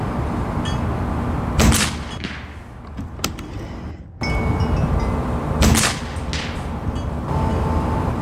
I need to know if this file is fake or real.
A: real